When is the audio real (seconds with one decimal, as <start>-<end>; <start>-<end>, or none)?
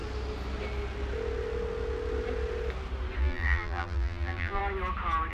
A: 0.0-3.2; 4.6-5.3